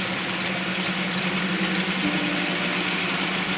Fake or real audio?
real